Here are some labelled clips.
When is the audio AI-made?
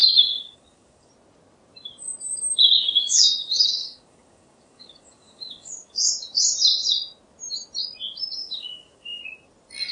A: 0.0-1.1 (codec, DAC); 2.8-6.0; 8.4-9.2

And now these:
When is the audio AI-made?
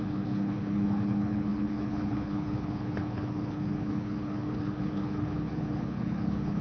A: 0.0-6.6 (codec, HILCodec)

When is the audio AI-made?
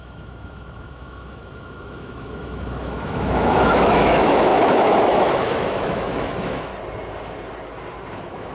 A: 0.0-6.7 (autoencoder, DAC-VAE); 8.1-8.5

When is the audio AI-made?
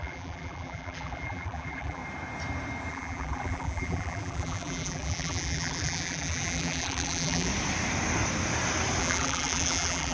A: 0.0-2.0 (vocoder, BigVGAN v2); 2.9-7.5; 9.0-10.1